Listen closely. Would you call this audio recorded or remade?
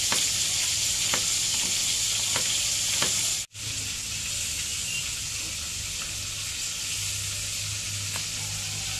recorded